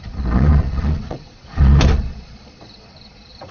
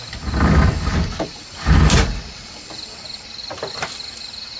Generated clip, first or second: first